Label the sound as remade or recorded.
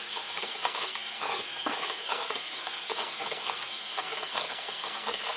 remade